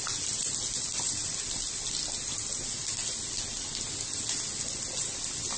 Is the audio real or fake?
real